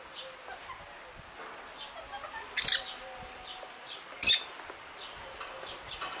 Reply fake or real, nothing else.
real